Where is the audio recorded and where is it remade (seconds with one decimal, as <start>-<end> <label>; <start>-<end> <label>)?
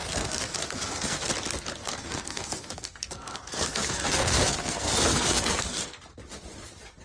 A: 0.0-1.3 remade; 1.3-1.8 recorded; 1.8-6.0 remade; 6.0-7.0 recorded